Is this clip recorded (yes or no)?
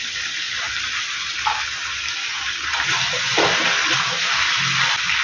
yes